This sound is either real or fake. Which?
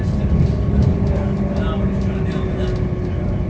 real